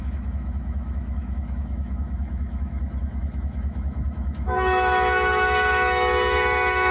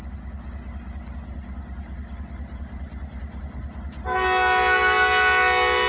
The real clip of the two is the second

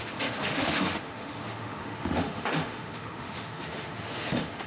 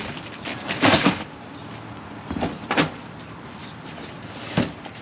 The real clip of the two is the second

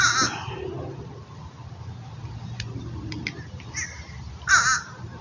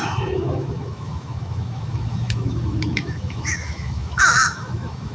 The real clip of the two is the first